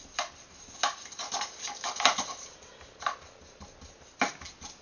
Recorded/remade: recorded